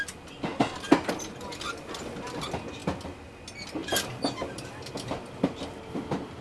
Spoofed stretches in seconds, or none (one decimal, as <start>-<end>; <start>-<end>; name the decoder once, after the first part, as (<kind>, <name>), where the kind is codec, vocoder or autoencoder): none